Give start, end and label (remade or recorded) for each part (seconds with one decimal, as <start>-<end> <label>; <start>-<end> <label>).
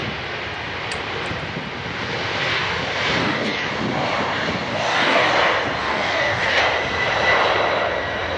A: 0.0-3.2 recorded; 3.2-3.7 remade; 3.7-4.7 recorded; 4.7-5.3 remade; 5.3-5.8 recorded; 5.8-6.6 remade; 6.6-8.4 recorded